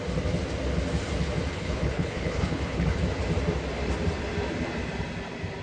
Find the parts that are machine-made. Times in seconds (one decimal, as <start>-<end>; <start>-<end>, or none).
1.5-3.0